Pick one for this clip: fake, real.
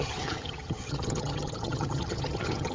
fake